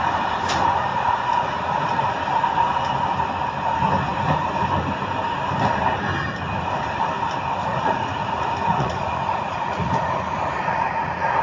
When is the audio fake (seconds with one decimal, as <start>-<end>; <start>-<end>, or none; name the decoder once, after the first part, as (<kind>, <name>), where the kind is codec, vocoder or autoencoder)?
0.9-2.0 (vocoder, Vocos); 7.6-11.4